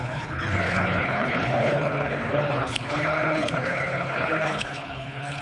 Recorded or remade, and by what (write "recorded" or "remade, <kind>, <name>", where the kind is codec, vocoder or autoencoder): remade, codec, HILCodec